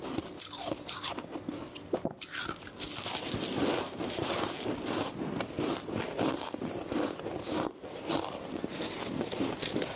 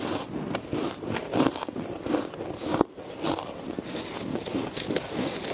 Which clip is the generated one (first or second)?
first